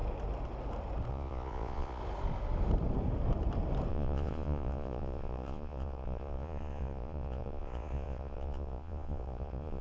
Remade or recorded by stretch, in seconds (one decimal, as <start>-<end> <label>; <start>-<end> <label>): 0.0-1.1 recorded; 1.1-2.0 remade; 2.0-3.9 recorded; 3.9-9.8 remade